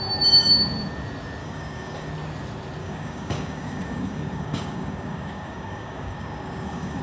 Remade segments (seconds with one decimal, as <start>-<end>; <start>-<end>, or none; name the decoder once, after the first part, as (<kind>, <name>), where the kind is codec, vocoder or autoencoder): 1.4-2.1 (codec, DAC); 2.8-7.0